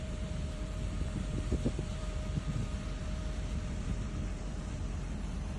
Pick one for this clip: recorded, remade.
remade